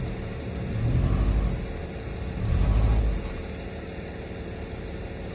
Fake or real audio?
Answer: real